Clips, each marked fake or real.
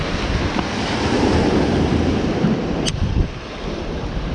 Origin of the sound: real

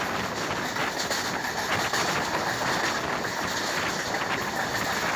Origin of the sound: real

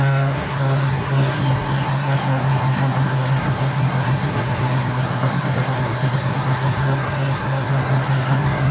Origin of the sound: fake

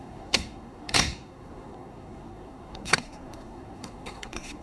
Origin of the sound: fake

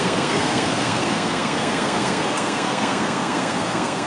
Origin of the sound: fake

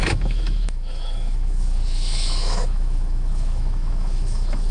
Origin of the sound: fake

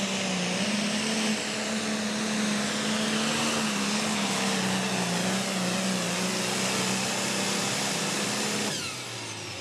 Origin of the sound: real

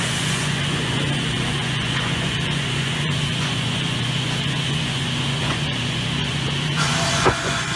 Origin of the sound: fake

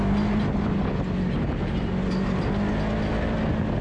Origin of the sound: real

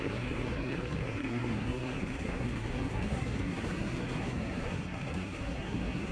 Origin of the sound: fake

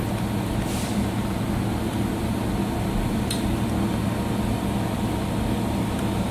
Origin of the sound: real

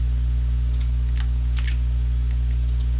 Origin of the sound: real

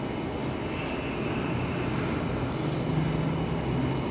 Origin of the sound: real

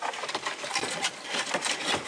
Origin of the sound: real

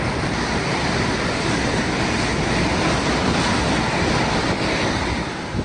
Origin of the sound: real